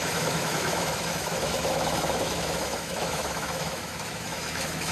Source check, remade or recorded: remade